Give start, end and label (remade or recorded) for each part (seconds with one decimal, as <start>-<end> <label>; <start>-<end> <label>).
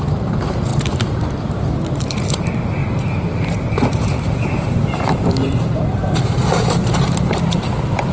0.0-8.1 remade